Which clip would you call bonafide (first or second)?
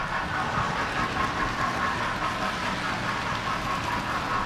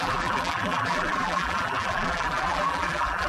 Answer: first